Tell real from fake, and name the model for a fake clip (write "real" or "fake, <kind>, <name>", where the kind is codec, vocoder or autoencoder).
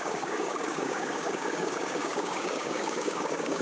fake, codec, DAC